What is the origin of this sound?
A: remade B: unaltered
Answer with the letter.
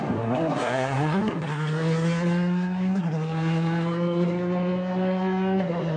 A